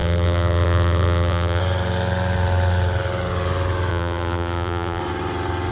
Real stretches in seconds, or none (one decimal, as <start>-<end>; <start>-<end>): 1.6-3.9; 5.0-5.7